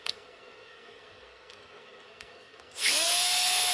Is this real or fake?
fake